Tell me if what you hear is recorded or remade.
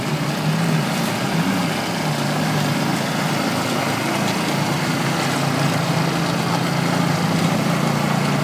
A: recorded